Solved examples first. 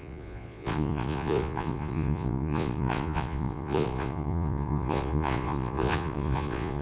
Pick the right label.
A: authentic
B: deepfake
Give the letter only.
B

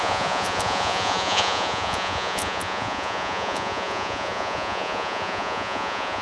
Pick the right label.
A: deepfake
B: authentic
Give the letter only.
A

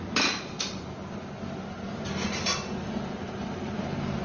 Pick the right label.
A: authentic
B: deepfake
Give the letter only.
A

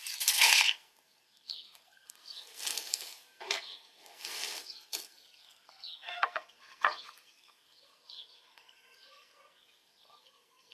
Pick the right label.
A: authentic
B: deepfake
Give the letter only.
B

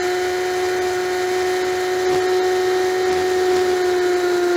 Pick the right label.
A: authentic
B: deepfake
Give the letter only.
A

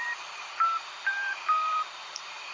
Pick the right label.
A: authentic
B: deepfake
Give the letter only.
B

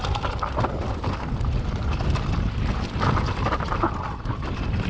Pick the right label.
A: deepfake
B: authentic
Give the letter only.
B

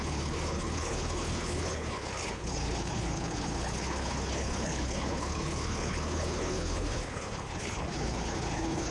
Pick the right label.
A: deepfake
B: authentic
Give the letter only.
A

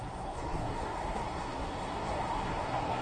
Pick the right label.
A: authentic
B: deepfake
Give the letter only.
B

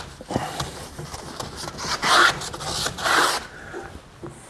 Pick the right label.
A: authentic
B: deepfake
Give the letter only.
A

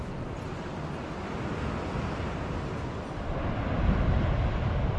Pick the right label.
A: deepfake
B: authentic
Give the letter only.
B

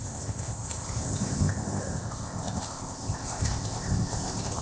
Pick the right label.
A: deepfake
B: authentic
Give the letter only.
A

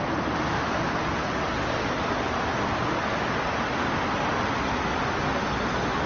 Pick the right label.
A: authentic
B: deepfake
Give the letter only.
A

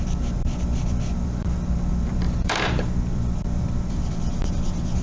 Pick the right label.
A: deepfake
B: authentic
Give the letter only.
A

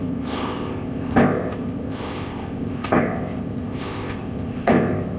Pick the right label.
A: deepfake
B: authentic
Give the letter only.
A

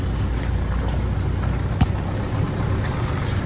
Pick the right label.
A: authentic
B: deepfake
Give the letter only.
A